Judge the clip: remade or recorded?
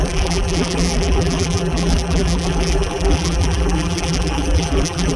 remade